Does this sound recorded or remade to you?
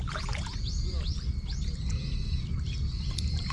recorded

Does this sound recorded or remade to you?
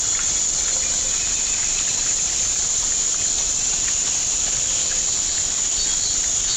recorded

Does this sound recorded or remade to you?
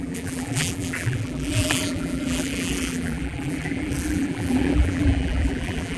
remade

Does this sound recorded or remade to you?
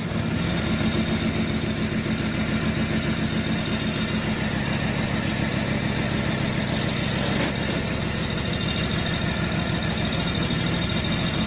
recorded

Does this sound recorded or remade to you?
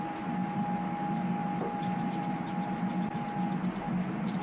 recorded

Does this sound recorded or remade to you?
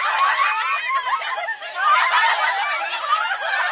recorded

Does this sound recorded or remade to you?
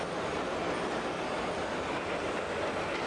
recorded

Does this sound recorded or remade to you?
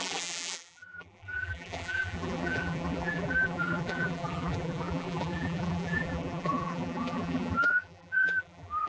remade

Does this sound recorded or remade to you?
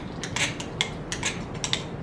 recorded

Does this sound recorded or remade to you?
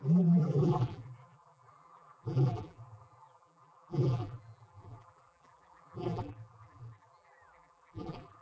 remade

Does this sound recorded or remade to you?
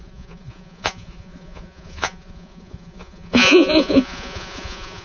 remade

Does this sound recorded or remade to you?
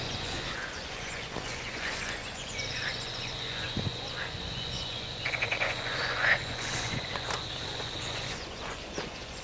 remade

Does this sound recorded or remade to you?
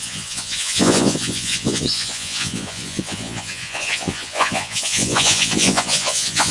remade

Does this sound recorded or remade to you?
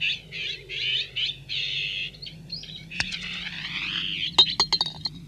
recorded